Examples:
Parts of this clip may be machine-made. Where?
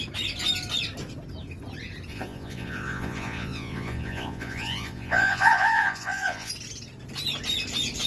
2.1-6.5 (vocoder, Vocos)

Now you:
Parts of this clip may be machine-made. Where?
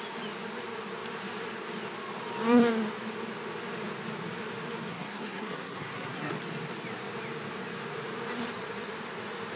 4.9-6.3 (codec, SNAC)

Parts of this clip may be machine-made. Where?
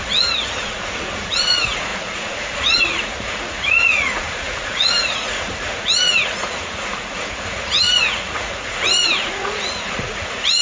0.0-10.6 (vocoder, Vocos)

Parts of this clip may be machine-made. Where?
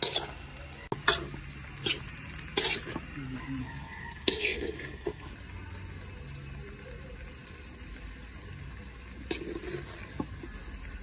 3.6-5.3 (codec, SNAC)